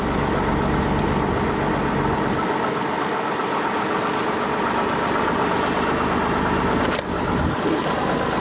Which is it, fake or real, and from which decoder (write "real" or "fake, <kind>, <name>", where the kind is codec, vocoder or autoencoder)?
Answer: real